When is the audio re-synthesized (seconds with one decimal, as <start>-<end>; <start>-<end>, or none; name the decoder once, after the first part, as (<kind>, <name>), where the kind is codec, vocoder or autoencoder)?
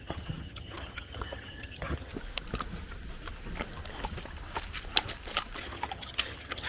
0.0-2.1 (vocoder, HiFi-GAN); 5.6-6.7